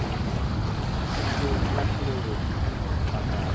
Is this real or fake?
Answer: real